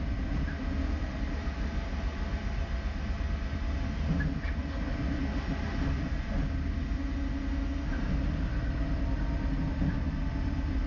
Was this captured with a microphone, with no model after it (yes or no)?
yes